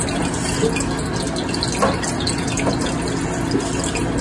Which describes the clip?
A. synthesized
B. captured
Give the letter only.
B